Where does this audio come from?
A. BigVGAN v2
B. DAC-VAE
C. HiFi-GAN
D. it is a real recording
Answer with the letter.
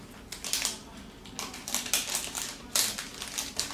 D